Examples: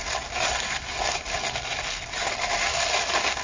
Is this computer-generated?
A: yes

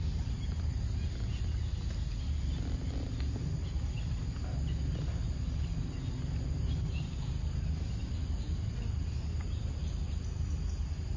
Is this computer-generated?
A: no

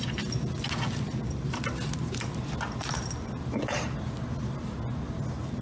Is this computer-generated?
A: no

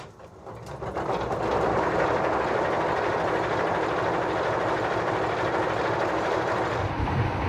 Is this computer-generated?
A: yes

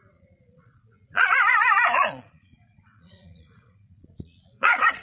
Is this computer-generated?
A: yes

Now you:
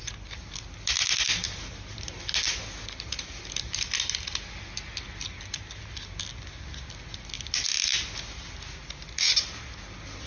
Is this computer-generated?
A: no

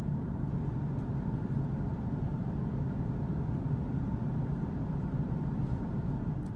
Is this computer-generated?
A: no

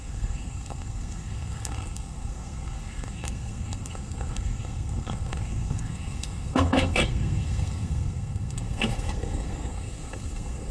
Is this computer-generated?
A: yes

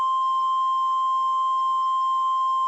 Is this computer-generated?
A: no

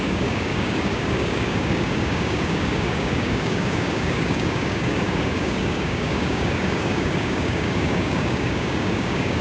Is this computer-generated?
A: yes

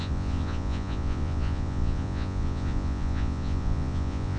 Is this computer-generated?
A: yes